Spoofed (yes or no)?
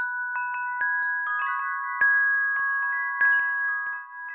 no